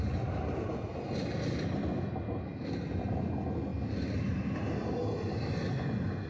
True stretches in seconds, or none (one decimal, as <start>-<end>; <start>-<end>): 0.0-6.3

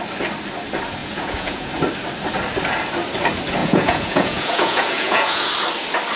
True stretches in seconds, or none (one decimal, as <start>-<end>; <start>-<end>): 0.0-1.0; 1.7-3.6; 5.5-6.2

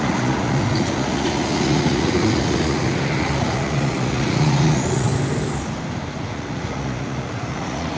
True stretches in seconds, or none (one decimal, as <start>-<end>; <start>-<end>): 5.1-6.1